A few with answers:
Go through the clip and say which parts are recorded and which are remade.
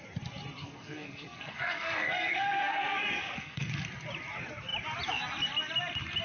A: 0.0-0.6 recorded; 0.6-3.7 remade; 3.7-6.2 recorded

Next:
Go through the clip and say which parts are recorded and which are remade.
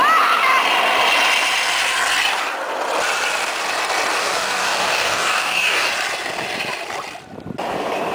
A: 0.0-4.2 recorded; 4.2-5.9 remade; 5.9-8.1 recorded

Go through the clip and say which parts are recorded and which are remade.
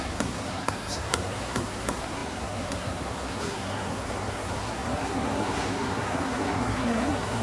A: 0.0-7.4 remade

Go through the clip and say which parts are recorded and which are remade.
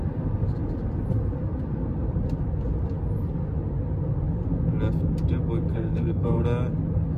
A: 0.0-5.7 recorded; 5.7-6.4 remade; 6.4-7.2 recorded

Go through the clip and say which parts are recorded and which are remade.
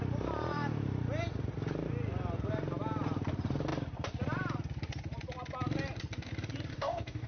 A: 0.0-6.7 recorded; 6.7-7.3 remade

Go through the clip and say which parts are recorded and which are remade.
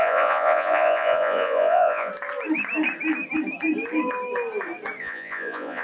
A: 0.0-2.1 remade; 2.1-5.0 recorded; 5.0-5.8 remade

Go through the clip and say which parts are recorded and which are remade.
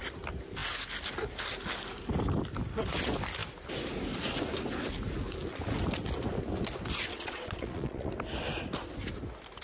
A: 0.0-7.1 recorded; 7.1-8.1 remade; 8.1-9.6 recorded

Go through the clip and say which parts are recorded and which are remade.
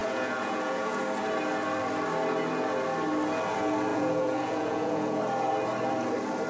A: 0.0-1.0 remade; 1.0-3.9 recorded; 3.9-5.2 remade; 5.2-6.5 recorded